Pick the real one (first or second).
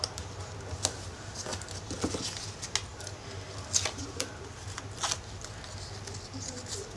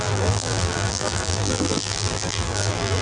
first